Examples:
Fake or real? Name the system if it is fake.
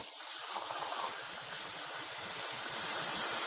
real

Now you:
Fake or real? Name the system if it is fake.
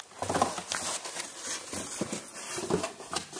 real